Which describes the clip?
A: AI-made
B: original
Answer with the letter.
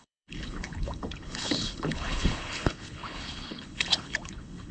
A